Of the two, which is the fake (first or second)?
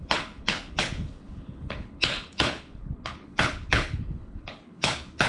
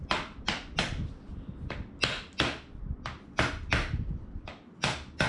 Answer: first